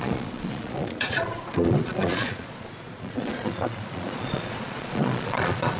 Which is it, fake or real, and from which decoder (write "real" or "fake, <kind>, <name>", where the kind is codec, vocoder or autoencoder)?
fake, vocoder, Vocos